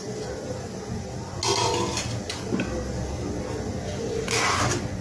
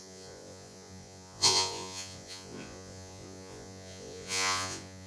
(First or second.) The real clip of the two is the first